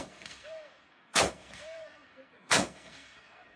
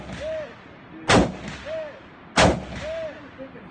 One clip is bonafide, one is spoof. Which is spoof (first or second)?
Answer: first